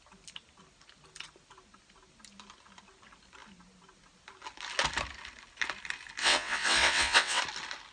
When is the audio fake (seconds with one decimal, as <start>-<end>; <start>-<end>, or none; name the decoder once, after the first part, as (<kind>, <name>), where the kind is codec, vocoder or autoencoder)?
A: 6.2-7.4 (vocoder, WaveNeXt)